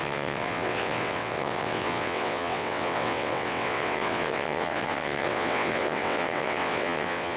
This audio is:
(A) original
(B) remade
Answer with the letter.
B